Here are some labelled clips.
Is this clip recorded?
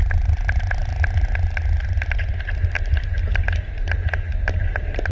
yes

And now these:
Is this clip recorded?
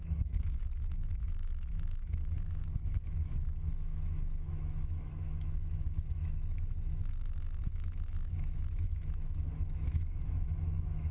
no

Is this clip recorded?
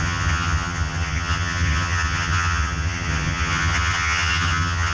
no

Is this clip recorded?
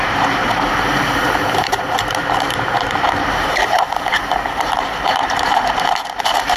no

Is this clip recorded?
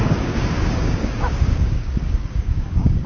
no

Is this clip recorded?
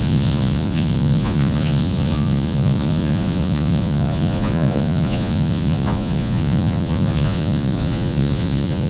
no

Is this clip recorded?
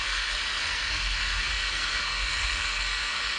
no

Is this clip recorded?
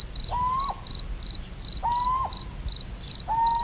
yes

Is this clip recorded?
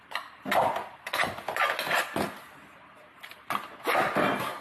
yes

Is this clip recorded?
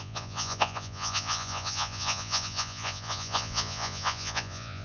no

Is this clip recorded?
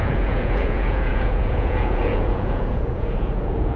no